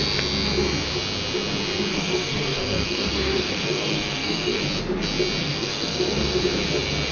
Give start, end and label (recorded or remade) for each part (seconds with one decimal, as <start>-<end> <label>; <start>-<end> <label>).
0.0-1.9 recorded; 1.9-4.6 remade; 4.6-5.4 recorded; 5.4-6.4 remade; 6.4-7.1 recorded